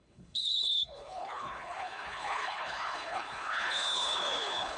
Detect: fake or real fake